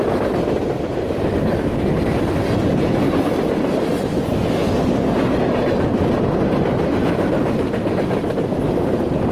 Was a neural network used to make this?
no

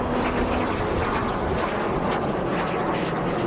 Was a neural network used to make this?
no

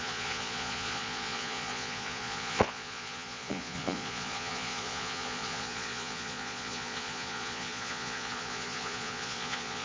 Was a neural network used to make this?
yes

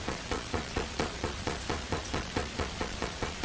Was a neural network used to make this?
yes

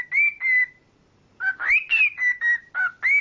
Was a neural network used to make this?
no